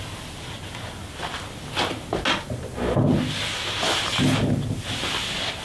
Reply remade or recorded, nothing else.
recorded